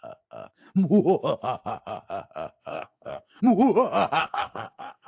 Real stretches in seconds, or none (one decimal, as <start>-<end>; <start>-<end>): 0.0-2.7; 3.4-4.2